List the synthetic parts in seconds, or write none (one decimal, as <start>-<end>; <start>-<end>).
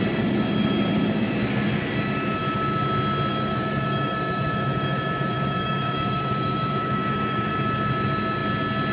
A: 3.3-7.5